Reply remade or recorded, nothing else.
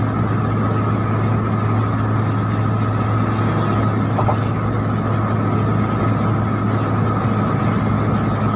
recorded